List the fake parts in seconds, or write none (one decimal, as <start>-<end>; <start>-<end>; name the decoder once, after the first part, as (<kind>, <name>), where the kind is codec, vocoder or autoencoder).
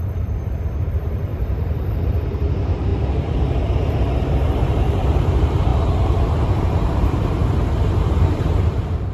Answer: 0.0-7.4 (vocoder, BigVGAN v2); 8.2-9.1